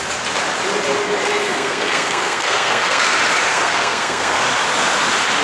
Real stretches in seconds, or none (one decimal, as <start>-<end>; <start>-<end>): 0.0-1.3; 3.0-3.5; 4.4-5.4